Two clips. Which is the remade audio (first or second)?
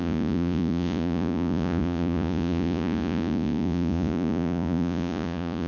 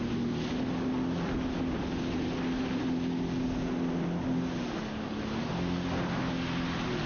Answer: first